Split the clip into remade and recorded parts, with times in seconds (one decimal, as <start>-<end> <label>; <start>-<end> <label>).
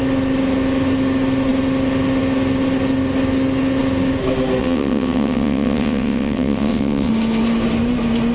0.0-4.6 recorded; 4.6-7.1 remade; 7.1-8.3 recorded